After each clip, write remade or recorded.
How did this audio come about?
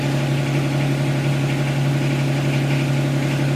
recorded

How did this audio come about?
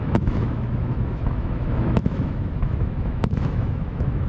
remade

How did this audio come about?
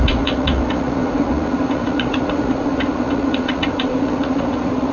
remade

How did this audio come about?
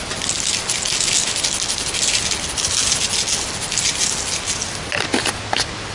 recorded